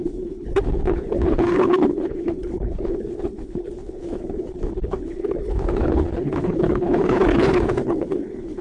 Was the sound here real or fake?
fake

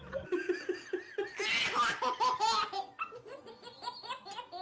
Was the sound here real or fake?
real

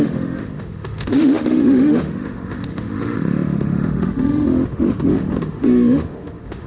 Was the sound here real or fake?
fake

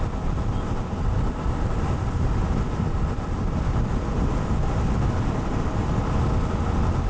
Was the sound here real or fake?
real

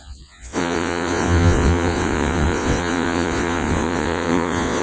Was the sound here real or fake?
fake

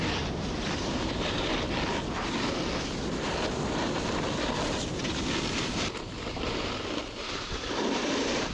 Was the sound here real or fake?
real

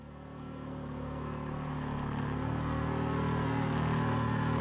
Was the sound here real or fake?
fake